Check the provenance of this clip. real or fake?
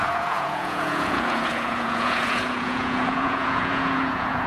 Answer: fake